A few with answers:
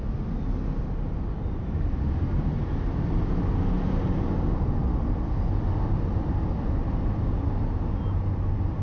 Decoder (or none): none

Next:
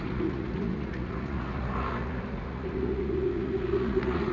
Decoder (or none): vocoder, Vocos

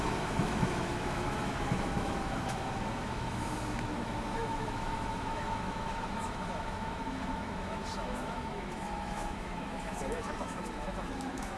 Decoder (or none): autoencoder, DAC-VAE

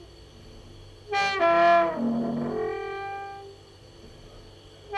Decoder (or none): none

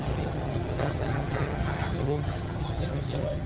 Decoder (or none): vocoder, HiFi-GAN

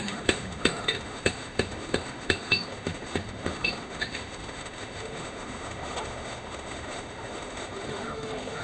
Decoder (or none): autoencoder, DAC-VAE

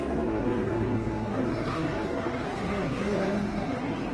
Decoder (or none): codec, SNAC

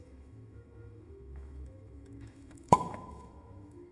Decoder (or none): autoencoder, DAC-VAE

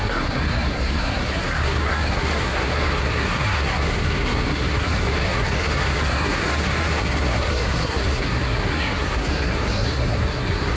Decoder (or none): codec, SNAC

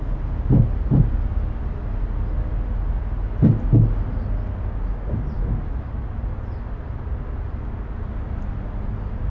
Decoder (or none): none